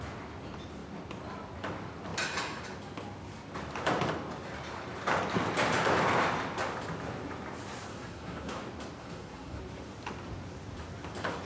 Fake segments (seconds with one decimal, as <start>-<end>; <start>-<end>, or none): 7.9-8.6; 9.0-9.6